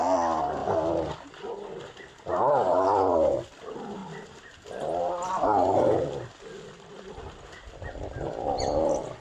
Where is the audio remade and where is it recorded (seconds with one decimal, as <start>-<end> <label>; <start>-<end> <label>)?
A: 0.0-0.6 recorded; 0.6-1.9 remade; 1.9-9.2 recorded